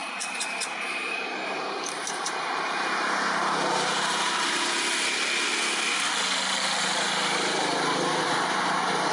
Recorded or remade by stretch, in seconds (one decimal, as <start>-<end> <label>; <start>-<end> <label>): 0.0-4.0 remade; 4.0-9.1 recorded

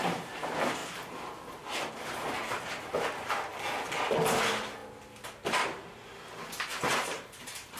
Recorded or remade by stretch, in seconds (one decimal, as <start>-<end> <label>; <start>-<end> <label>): 0.0-0.8 remade; 0.8-1.9 recorded; 1.9-3.5 remade; 3.5-4.1 recorded; 4.1-4.8 remade; 4.8-6.8 recorded; 6.8-7.8 remade

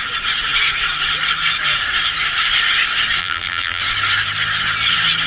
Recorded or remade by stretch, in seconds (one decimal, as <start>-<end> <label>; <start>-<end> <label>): 0.0-3.2 recorded; 3.2-3.8 remade; 3.8-5.3 recorded

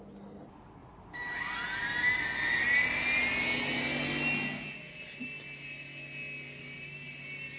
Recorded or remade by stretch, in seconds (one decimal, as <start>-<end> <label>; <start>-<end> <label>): 0.0-0.8 recorded; 0.8-1.4 remade; 1.4-7.6 recorded